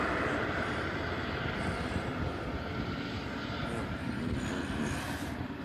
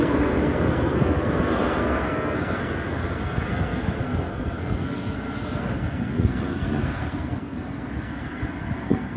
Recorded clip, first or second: first